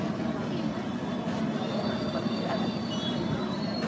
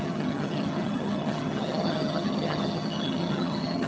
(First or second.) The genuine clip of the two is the first